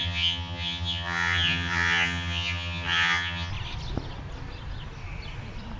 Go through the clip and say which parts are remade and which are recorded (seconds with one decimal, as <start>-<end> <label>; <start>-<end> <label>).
0.0-3.5 remade; 3.5-5.8 recorded